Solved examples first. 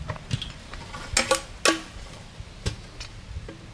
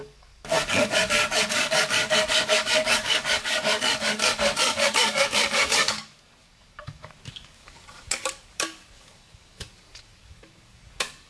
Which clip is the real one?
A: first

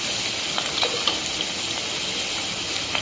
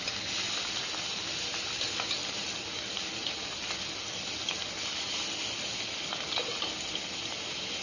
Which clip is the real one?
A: second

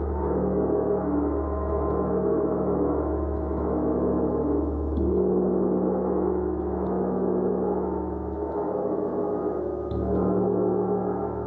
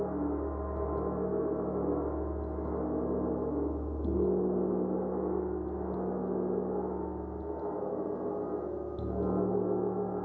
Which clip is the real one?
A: second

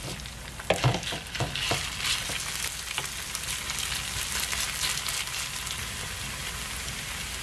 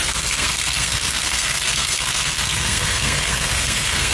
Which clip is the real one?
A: first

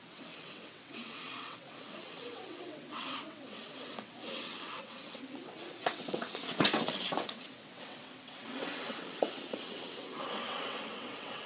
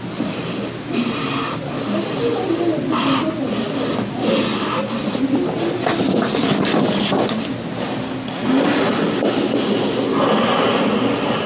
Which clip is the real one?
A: second